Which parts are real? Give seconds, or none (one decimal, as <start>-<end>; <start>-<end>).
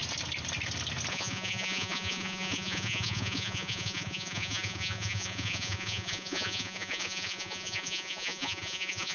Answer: 0.0-1.1